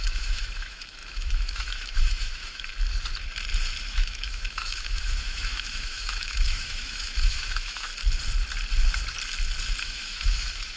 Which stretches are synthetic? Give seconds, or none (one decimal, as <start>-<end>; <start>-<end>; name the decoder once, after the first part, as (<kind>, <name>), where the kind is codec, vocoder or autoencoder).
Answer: 0.0-2.7 (autoencoder, DAC-VAE); 3.9-7.9; 9.8-10.8